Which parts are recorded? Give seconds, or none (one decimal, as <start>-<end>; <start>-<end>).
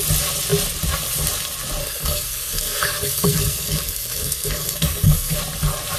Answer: 0.0-1.8; 5.4-6.0